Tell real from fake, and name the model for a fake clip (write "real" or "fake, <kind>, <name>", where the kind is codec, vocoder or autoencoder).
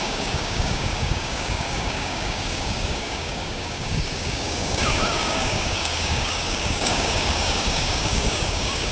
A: fake, codec, DAC